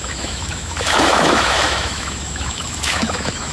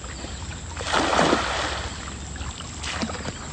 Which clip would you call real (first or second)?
second